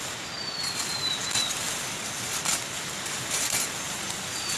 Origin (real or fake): real